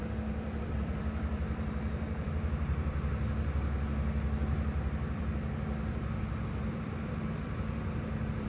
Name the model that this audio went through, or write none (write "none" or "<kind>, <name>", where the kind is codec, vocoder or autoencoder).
vocoder, BigVGAN v2